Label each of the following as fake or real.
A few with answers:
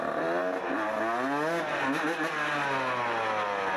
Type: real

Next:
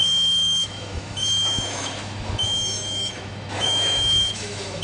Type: fake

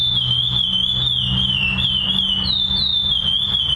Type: real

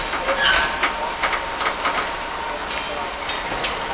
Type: real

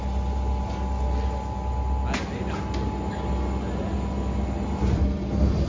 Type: real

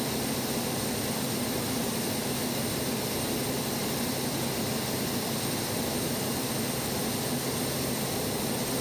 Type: real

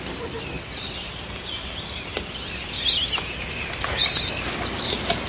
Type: real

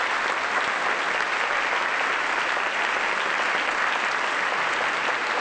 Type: real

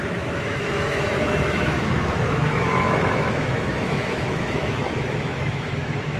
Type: fake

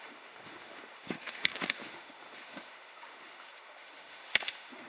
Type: fake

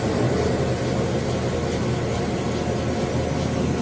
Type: real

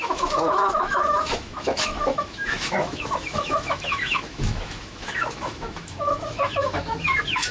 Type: fake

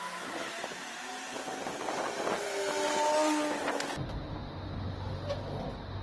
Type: real